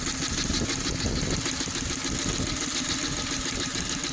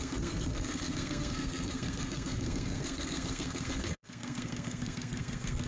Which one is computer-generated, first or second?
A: second